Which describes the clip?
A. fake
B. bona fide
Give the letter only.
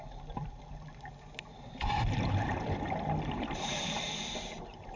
B